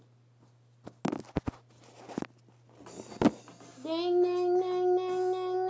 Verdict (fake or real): real